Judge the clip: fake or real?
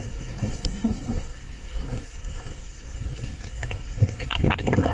fake